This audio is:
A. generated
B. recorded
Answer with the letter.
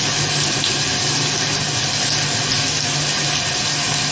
B